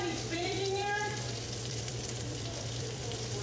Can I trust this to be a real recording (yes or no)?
no